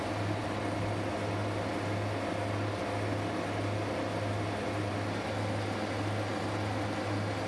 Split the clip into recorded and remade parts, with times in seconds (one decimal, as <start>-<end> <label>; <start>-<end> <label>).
0.0-7.5 recorded